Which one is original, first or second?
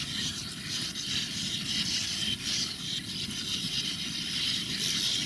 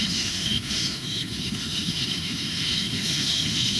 first